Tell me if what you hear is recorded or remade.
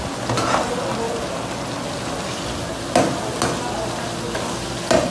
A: recorded